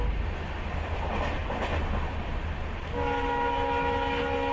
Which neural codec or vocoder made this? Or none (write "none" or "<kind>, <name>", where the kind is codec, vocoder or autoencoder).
none